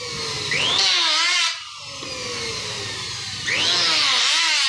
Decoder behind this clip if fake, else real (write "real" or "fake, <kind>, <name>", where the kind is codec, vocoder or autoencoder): real